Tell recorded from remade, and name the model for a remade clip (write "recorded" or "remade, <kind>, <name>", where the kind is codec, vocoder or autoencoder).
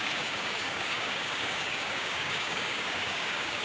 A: remade, codec, DAC